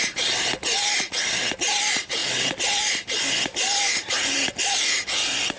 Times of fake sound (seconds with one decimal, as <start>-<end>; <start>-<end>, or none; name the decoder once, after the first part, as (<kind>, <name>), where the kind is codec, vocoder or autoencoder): none